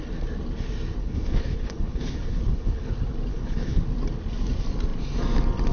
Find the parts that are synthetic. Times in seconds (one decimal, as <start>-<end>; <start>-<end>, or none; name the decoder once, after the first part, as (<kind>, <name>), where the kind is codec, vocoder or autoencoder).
1.0-2.9 (codec, HILCodec); 3.3-3.8